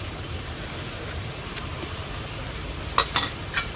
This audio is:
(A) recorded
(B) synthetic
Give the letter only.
B